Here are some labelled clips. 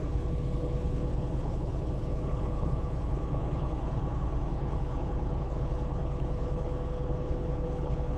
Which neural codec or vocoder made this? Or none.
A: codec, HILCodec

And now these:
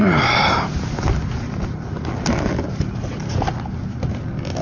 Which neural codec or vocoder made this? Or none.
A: none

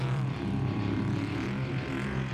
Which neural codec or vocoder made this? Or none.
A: vocoder, BigVGAN v2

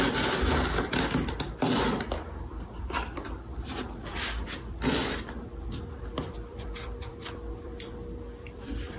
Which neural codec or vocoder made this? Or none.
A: vocoder, BigVGAN v2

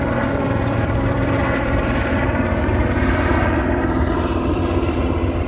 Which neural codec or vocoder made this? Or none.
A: vocoder, BigVGAN v2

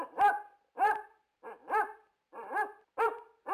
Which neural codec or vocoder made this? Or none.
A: vocoder, BigVGAN v2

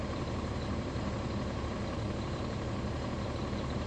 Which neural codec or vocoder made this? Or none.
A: vocoder, BigVGAN v2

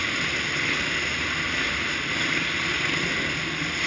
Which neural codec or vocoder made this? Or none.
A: none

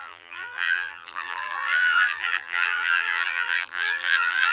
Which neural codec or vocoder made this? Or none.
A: vocoder, BigVGAN v2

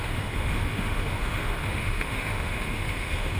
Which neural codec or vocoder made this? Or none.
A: autoencoder, DAC-VAE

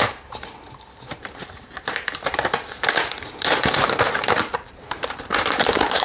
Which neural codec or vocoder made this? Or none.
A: vocoder, BigVGAN v2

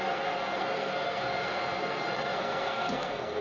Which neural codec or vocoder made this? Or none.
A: codec, SNAC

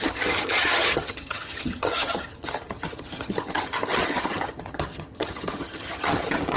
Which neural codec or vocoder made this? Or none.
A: vocoder, HiFi-GAN